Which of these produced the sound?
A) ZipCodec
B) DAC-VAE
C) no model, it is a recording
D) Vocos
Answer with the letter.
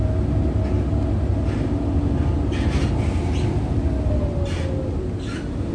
C